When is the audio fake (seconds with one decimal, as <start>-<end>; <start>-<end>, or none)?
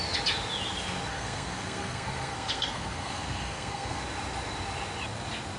1.1-4.0